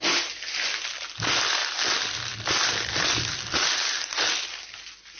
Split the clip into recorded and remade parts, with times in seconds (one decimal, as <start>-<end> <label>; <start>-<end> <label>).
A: 0.0-5.2 recorded